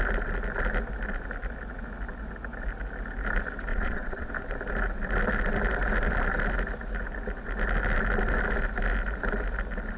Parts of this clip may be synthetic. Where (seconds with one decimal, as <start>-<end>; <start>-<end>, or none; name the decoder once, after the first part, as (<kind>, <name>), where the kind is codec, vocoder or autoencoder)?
3.7-4.3 (vocoder, Vocos)